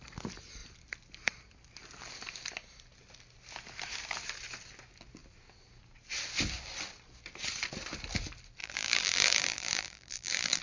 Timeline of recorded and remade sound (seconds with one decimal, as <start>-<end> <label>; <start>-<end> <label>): 0.0-8.6 recorded; 8.6-10.6 remade